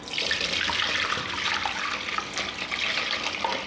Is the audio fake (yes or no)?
no